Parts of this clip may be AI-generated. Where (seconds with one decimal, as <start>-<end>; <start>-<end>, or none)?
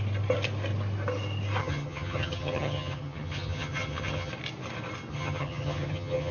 1.6-4.3; 5.1-6.3